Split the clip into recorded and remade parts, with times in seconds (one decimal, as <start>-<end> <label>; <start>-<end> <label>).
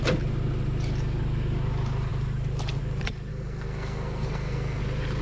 0.0-3.3 recorded; 3.3-4.8 remade; 4.8-5.2 recorded